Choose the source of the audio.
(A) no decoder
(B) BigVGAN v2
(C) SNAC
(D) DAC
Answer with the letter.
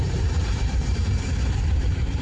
B